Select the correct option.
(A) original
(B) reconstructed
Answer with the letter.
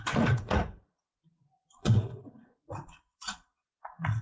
B